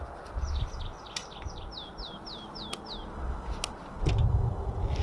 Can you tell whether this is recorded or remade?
recorded